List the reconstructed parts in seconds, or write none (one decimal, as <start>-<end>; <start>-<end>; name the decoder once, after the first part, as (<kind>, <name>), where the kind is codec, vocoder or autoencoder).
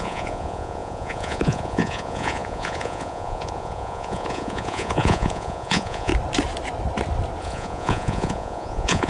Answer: 0.0-6.1 (vocoder, Vocos); 7.4-9.1